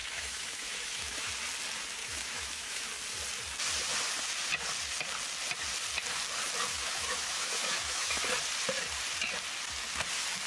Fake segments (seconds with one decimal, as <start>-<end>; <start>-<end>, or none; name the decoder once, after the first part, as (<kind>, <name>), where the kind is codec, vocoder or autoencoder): 0.0-1.3 (autoencoder, DAC-VAE); 2.0-2.9; 6.7-8.2